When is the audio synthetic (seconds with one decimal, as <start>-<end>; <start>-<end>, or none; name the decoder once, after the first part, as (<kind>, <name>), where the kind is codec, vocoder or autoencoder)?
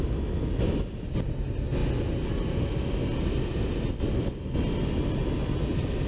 none